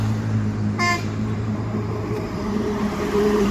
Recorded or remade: remade